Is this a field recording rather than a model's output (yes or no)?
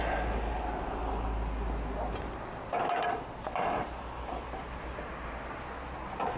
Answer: yes